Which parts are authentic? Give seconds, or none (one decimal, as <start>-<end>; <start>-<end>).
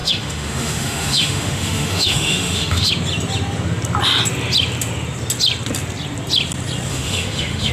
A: 2.9-6.9